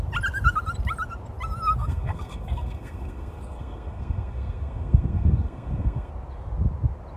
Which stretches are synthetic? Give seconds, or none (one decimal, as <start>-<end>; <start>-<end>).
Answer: 1.8-6.1